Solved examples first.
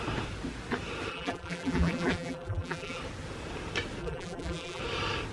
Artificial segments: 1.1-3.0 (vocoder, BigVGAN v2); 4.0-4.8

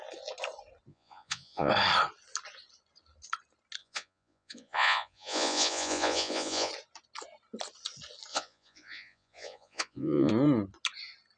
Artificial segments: 0.9-1.7 (vocoder, Vocos); 3.8-6.7; 8.3-10.3

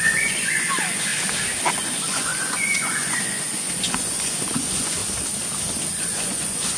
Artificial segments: 0.0-1.1 (vocoder, Vocos); 1.7-5.0; 5.9-6.8

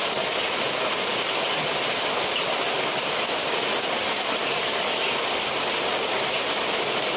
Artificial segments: 1.1-3.4 (vocoder, BigVGAN v2)

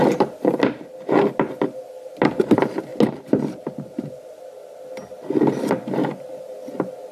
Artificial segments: none

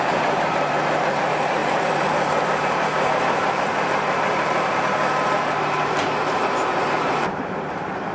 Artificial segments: 0.0-8.1 (vocoder, BigVGAN v2)

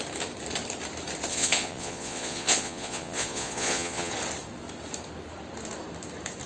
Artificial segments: 1.3-4.1 (vocoder, Vocos)

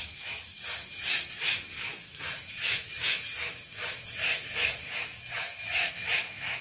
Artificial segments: 0.0-6.6 (autoencoder, DAC-VAE)